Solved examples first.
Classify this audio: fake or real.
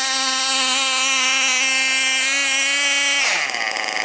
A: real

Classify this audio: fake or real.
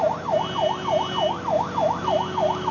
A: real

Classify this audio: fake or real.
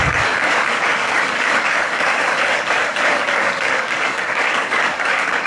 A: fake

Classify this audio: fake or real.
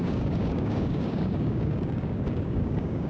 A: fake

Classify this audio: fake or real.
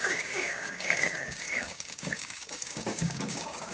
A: fake